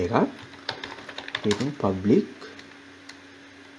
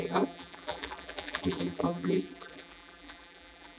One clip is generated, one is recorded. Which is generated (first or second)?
second